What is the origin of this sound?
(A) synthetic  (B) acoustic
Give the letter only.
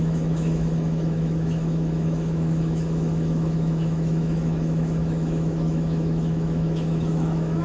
A